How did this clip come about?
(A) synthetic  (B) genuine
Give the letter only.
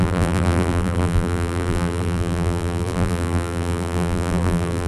A